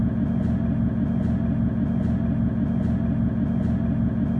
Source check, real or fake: real